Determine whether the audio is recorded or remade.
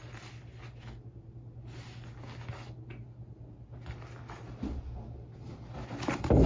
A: recorded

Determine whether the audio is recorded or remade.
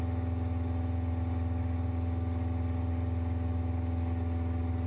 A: recorded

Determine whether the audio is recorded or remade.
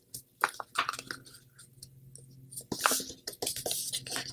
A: recorded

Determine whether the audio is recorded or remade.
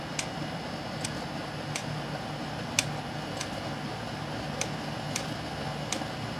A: recorded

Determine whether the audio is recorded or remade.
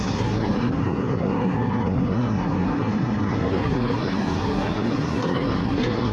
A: remade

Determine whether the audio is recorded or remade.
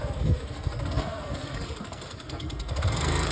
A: remade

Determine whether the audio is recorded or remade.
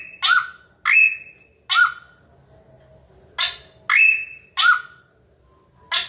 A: recorded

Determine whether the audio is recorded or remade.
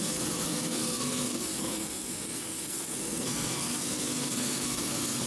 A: remade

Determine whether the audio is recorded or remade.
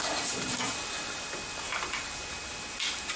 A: recorded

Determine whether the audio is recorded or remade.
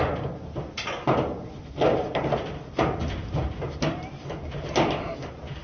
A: recorded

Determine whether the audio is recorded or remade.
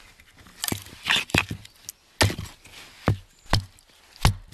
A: recorded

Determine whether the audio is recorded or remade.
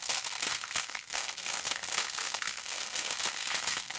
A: remade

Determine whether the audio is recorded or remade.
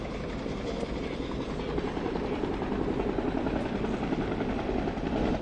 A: recorded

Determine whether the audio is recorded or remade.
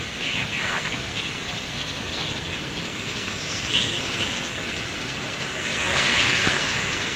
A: remade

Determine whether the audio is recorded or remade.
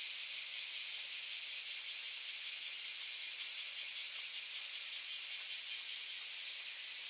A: recorded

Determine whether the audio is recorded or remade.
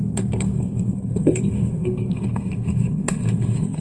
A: remade